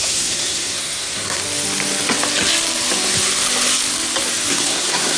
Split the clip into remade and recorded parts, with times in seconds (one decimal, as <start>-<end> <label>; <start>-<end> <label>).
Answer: 0.0-1.4 remade; 1.4-4.5 recorded; 4.5-5.2 remade